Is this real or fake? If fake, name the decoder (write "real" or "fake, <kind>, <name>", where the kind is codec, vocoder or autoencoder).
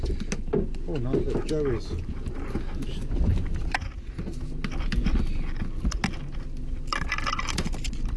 real